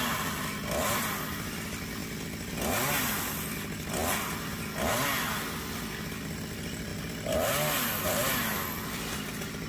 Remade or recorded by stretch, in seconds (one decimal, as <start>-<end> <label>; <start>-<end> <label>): 0.0-9.7 recorded